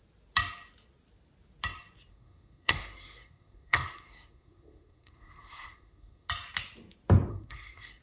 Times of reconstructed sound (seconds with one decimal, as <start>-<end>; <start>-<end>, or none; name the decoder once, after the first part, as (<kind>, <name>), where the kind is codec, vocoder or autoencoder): 2.1-6.3 (codec, SNAC); 7.3-8.0

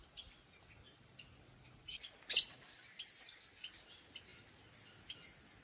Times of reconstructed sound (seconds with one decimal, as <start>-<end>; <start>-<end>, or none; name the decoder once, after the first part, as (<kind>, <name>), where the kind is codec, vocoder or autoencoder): none